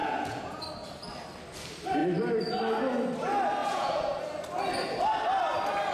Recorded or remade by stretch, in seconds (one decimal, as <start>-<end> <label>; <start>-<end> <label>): 0.0-0.6 remade; 0.6-3.6 recorded; 3.6-4.2 remade; 4.2-5.9 recorded